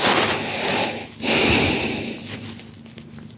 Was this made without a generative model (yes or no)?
yes